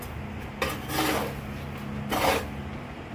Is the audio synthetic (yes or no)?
no